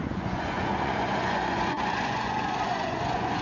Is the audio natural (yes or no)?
no